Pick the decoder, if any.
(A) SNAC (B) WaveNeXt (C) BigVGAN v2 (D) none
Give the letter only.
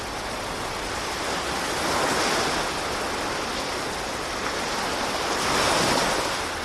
D